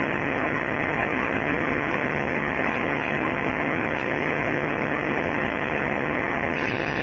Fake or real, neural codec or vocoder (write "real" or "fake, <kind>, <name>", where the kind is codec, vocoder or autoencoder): fake, vocoder, HiFi-GAN